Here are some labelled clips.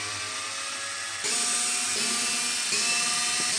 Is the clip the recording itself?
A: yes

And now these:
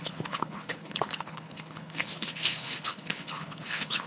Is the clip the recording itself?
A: no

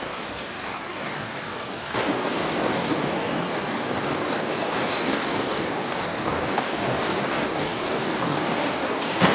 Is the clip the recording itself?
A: no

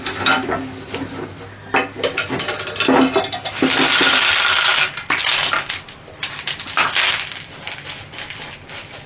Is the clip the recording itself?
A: yes